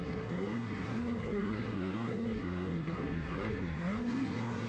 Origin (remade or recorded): remade